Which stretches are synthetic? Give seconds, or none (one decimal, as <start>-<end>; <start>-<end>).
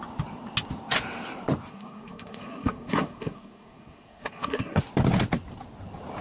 1.7-4.8